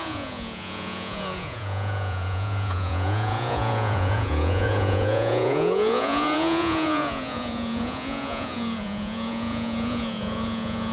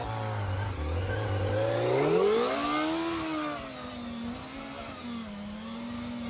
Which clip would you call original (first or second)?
second